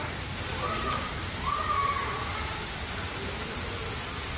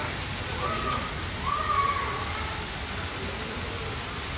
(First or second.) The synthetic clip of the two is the first